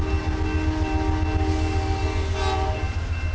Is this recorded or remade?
recorded